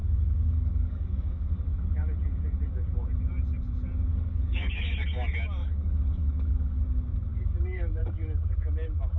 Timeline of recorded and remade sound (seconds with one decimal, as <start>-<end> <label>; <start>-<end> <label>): 0.0-1.9 remade; 1.9-4.1 recorded; 4.1-4.8 remade; 4.8-5.6 recorded; 5.6-6.8 remade; 6.8-7.3 recorded; 7.3-8.0 remade; 8.0-9.2 recorded

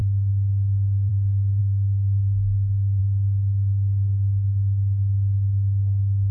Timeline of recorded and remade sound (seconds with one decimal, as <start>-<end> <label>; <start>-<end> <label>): 0.0-1.6 recorded; 1.6-3.0 remade; 3.0-6.3 recorded

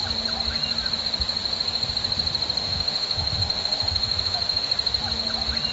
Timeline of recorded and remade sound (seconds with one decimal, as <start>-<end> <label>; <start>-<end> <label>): 0.0-2.6 recorded; 2.6-4.7 remade; 4.7-5.7 recorded

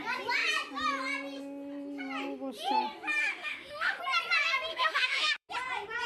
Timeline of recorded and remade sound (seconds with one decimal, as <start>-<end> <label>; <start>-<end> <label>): 0.0-3.2 recorded; 3.2-4.0 remade; 4.0-4.7 recorded; 4.7-5.5 remade; 5.5-6.1 recorded

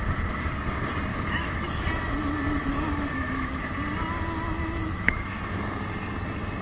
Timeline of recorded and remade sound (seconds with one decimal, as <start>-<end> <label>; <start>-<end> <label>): 0.0-1.1 recorded; 1.1-1.8 remade; 1.8-2.6 recorded; 2.6-3.7 remade; 3.7-4.8 recorded; 4.8-5.4 remade; 5.4-6.6 recorded

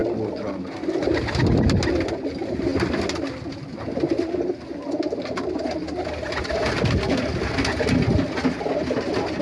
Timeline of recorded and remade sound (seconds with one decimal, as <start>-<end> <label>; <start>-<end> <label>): 0.0-9.4 recorded